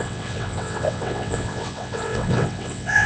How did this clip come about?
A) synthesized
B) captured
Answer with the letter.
A